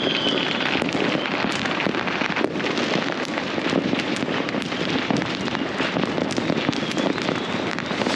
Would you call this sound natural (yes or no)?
no